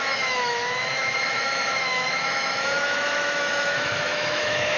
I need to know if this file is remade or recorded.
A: remade